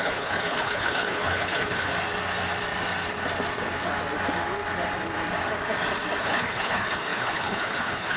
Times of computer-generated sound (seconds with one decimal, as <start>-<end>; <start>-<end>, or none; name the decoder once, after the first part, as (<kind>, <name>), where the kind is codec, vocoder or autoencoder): 0.0-1.9 (codec, HILCodec); 6.2-8.2